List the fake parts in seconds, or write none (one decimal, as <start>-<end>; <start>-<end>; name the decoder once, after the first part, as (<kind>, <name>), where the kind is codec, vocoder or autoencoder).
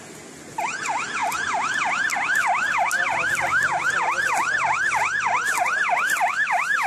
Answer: none